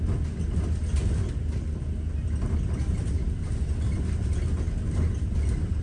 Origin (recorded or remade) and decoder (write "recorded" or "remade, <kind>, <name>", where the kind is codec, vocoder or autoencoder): recorded